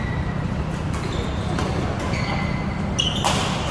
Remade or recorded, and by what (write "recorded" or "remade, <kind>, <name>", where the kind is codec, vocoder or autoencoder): recorded